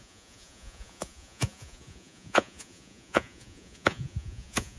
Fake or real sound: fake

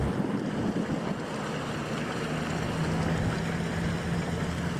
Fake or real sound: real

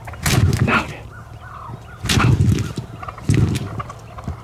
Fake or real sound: real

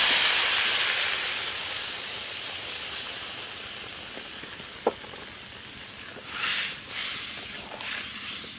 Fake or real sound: real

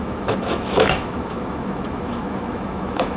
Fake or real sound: fake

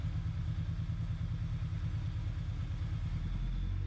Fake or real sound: real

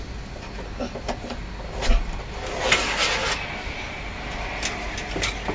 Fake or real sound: real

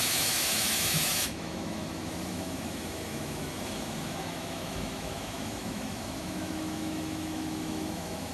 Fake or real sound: fake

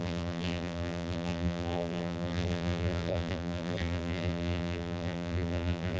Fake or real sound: fake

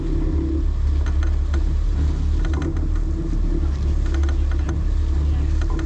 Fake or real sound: real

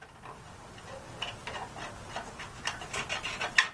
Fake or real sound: real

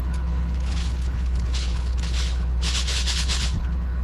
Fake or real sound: fake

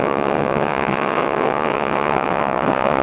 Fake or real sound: fake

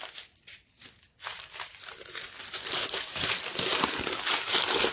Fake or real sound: real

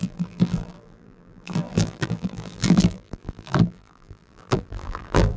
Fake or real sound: fake